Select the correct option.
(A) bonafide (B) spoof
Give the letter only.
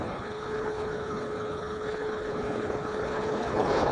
B